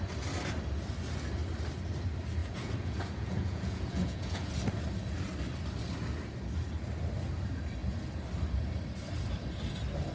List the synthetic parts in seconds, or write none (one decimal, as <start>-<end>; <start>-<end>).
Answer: 2.4-4.5